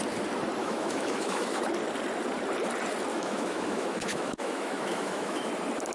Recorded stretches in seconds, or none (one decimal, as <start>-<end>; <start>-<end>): 0.0-0.6; 1.6-3.1; 5.5-5.9